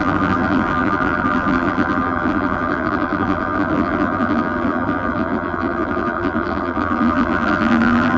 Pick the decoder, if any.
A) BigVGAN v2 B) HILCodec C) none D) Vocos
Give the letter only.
A